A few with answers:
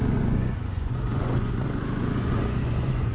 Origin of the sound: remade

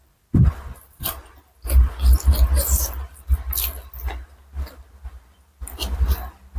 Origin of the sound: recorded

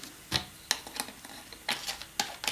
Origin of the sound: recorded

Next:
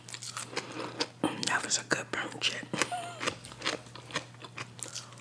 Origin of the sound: recorded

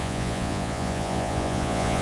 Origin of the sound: remade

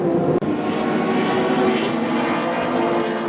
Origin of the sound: recorded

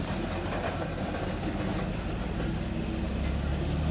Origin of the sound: recorded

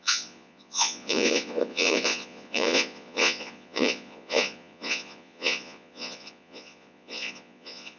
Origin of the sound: remade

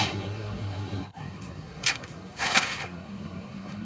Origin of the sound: remade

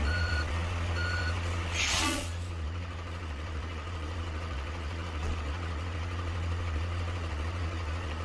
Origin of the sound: remade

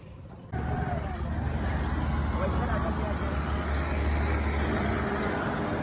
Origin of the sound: recorded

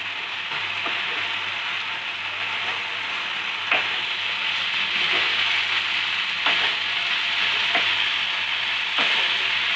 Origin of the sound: recorded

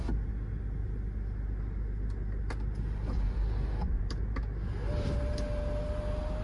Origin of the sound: recorded